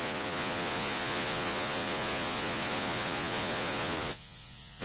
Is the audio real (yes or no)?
no